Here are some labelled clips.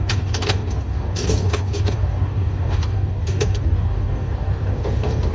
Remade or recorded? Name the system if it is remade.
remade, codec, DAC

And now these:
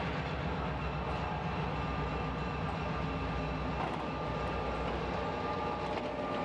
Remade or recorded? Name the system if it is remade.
recorded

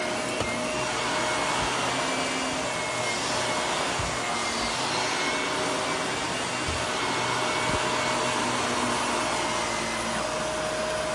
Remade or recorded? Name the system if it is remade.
recorded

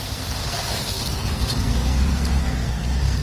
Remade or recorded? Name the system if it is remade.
remade, codec, SNAC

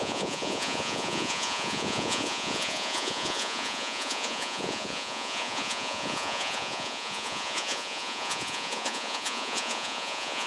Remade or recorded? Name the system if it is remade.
remade, vocoder, Vocos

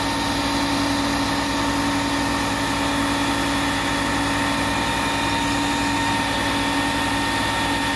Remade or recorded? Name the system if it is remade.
recorded